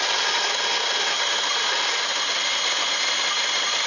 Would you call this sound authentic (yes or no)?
yes